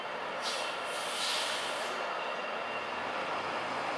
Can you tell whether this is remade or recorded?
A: recorded